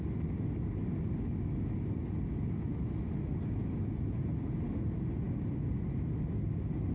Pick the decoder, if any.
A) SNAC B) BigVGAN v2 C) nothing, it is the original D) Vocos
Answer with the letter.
C